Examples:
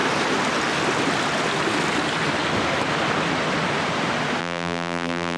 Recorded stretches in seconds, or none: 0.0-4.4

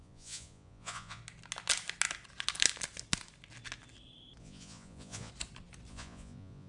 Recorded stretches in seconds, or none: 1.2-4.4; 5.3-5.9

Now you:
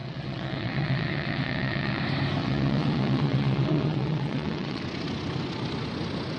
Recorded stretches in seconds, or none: 2.0-2.4; 4.8-6.4

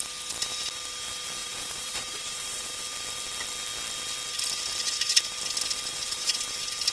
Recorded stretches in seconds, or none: 0.0-1.4; 2.8-5.9; 6.4-6.9

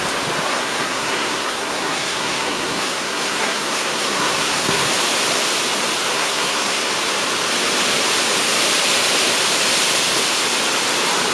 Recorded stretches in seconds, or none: 0.0-0.5; 4.9-6.1; 6.9-11.3

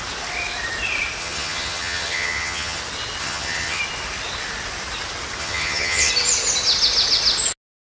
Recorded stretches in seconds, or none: 0.0-1.2; 2.8-3.2; 3.8-5.4; 6.1-7.9

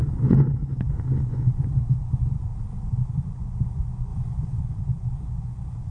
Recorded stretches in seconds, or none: 2.5-3.1